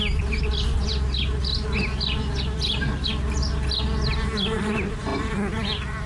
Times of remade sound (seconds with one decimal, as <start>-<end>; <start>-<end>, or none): none